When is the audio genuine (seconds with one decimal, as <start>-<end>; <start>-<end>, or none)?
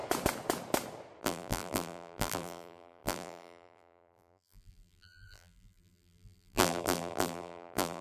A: 0.0-1.2